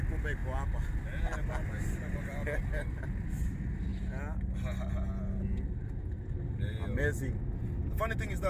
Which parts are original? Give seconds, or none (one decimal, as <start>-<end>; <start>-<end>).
0.0-8.5